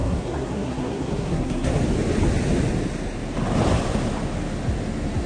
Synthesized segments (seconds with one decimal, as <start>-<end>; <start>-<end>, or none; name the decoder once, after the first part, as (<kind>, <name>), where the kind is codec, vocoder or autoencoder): 0.0-1.7 (codec, SNAC)